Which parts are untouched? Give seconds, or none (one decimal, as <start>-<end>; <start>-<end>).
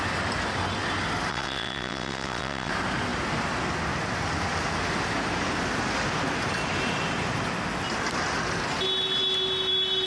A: 0.0-1.3; 2.7-10.1